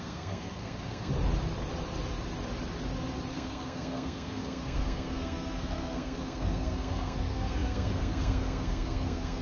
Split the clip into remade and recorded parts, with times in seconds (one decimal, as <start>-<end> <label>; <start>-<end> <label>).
0.0-1.1 remade; 1.1-3.3 recorded; 3.3-9.4 remade